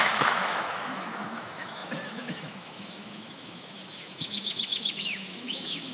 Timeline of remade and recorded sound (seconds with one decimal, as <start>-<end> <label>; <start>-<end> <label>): 0.0-5.9 remade